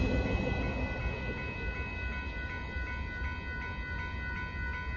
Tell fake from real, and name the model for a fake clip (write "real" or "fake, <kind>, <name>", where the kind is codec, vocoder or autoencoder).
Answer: real